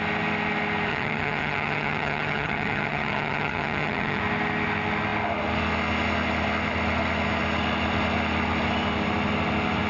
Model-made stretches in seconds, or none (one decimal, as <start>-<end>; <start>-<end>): 0.9-4.2

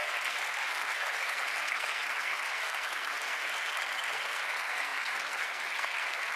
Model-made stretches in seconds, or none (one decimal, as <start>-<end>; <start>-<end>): 0.0-6.4

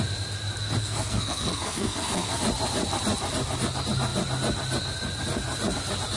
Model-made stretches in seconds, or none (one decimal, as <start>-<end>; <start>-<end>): 0.8-2.4